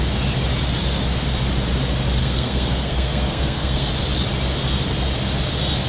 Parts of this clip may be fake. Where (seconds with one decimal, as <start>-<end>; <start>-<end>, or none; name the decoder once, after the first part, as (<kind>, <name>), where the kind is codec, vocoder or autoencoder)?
2.2-3.9 (codec, SNAC)